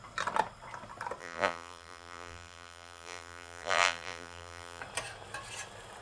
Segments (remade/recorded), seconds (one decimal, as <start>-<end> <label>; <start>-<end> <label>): 0.0-1.2 recorded; 1.2-4.8 remade; 4.8-6.0 recorded